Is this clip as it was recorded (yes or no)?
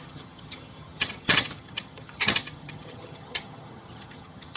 no